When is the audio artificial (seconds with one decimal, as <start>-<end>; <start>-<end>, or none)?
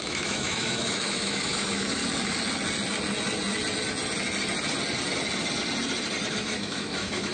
0.0-2.0; 6.3-7.3